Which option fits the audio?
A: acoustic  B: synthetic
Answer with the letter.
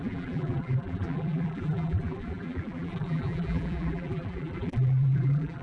B